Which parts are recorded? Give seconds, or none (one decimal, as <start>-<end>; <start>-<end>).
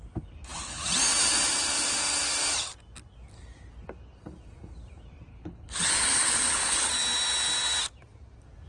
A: 0.0-5.3; 6.9-8.7